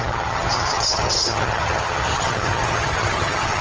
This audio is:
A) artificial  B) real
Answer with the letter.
A